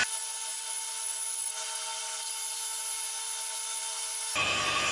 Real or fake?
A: real